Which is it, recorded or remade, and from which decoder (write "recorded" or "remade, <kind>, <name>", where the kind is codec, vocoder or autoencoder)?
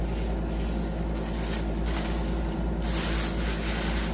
recorded